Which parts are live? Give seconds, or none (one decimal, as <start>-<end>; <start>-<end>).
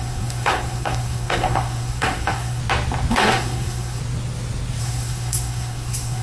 2.6-3.1; 4.0-4.8